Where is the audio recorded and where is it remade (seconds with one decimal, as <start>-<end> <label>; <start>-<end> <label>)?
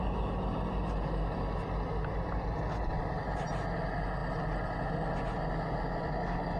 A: 0.0-6.6 recorded